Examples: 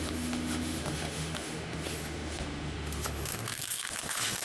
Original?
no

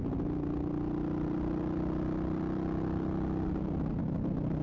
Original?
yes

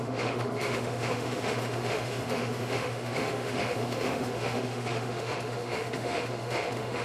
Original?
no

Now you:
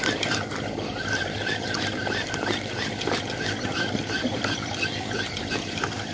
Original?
yes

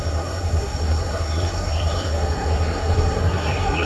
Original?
no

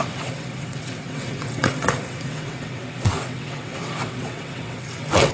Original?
no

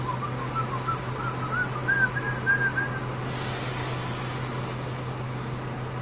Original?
yes